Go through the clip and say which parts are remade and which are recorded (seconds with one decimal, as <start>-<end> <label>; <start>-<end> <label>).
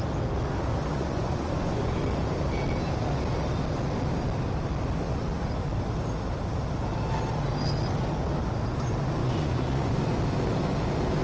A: 0.0-0.9 recorded; 0.9-1.9 remade; 1.9-9.2 recorded; 9.2-10.2 remade; 10.2-11.2 recorded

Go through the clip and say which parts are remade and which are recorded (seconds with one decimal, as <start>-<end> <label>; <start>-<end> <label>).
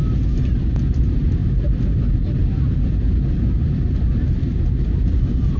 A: 0.0-1.0 recorded; 1.0-5.6 remade